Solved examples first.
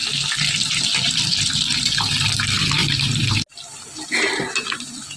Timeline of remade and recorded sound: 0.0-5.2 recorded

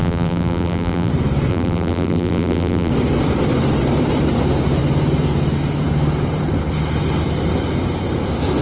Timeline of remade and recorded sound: 0.0-1.1 remade; 1.1-1.5 recorded; 1.5-2.9 remade; 2.9-8.6 recorded

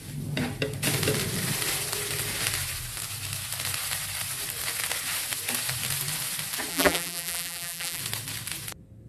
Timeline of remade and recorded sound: 0.0-6.7 recorded; 6.7-8.0 remade; 8.0-9.1 recorded